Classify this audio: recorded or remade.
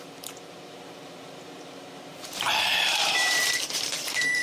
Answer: remade